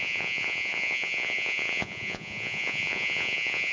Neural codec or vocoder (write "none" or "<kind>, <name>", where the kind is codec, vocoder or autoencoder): vocoder, Vocos